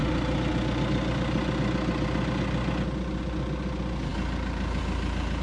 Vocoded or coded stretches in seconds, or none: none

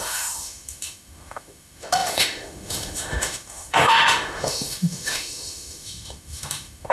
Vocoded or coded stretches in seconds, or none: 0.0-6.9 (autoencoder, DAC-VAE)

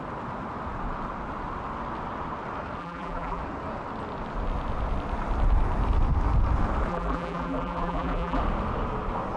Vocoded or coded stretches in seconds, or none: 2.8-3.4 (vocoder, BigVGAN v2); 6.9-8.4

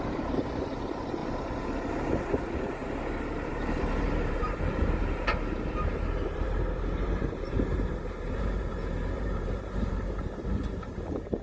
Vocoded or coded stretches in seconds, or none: 0.0-1.2 (vocoder, BigVGAN v2); 2.1-2.8; 3.5-5.3; 5.9-11.4